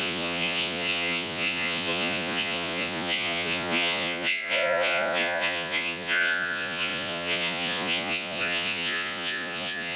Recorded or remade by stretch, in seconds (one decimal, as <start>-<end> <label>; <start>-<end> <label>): 0.0-10.0 remade

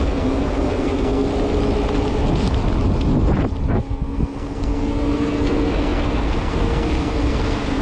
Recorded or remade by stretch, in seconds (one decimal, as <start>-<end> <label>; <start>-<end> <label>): 0.0-1.3 remade; 1.3-3.7 recorded; 3.7-7.8 remade

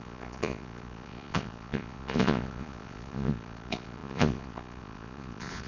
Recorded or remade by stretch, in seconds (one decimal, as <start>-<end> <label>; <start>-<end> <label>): 0.0-5.7 remade

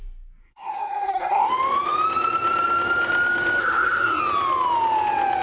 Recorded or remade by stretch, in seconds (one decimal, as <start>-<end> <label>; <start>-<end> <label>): 0.0-0.4 recorded; 0.4-1.5 remade; 1.5-3.6 recorded; 3.6-4.2 remade; 4.2-5.4 recorded